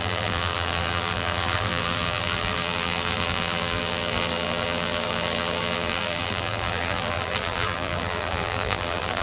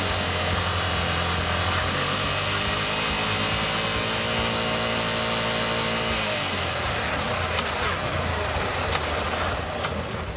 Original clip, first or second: second